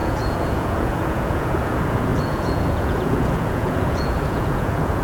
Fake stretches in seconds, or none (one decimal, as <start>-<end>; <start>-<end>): 0.0-5.0